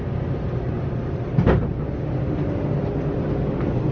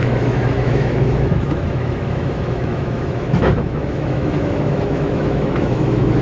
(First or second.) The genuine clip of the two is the first